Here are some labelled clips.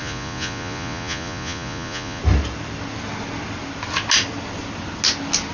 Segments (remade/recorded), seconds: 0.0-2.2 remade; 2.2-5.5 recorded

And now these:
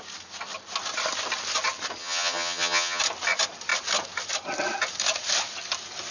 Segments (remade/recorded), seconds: 0.0-2.0 recorded; 2.0-3.0 remade; 3.0-6.1 recorded

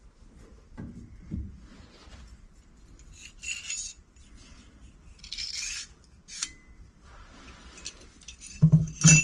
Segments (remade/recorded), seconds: 0.0-9.2 recorded

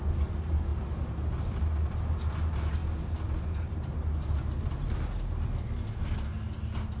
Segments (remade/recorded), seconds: 0.0-7.0 recorded